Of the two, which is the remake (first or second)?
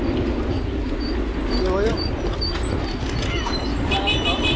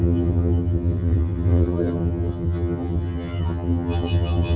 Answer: second